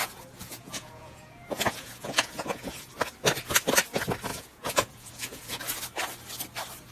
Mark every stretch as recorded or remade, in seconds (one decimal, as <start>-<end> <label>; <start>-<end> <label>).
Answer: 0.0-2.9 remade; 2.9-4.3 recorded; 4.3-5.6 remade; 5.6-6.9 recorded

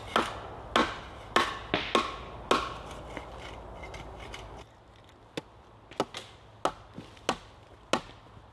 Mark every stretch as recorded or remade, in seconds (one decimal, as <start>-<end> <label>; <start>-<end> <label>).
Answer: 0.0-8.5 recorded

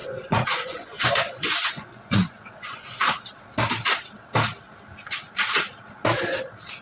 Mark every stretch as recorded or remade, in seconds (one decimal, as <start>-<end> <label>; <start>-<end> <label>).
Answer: 0.0-3.0 remade; 3.0-6.8 recorded

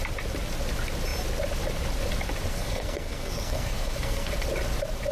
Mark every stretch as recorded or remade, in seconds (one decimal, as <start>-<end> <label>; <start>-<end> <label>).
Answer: 0.0-2.5 recorded; 2.5-4.3 remade; 4.3-5.1 recorded

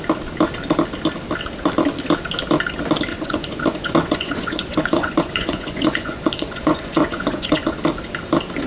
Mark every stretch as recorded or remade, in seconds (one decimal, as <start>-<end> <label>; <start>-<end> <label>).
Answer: 0.0-3.1 recorded; 3.1-7.8 remade; 7.8-8.7 recorded

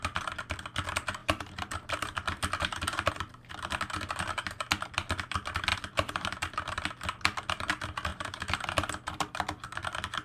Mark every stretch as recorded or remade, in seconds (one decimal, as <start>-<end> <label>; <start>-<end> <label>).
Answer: 0.0-1.2 recorded; 1.2-3.1 remade; 3.1-5.7 recorded; 5.7-6.8 remade; 6.8-8.1 recorded; 8.1-8.6 remade; 8.6-10.2 recorded

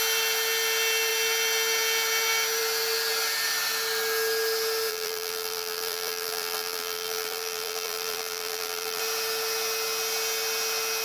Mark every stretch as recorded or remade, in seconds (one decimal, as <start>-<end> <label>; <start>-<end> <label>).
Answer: 0.0-4.9 recorded; 4.9-9.0 remade; 9.0-11.0 recorded

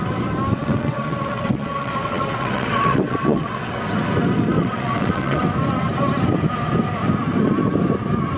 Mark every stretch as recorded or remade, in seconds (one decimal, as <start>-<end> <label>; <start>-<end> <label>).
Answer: 0.0-0.5 recorded; 0.5-3.8 remade; 3.8-4.6 recorded; 4.6-5.4 remade; 5.4-8.4 recorded